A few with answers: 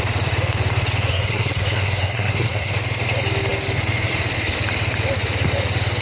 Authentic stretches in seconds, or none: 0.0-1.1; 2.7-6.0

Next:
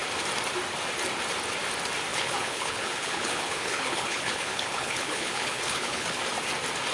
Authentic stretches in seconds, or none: 0.0-2.1; 6.2-6.9